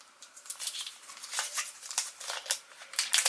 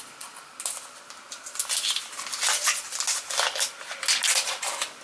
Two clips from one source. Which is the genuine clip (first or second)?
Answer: second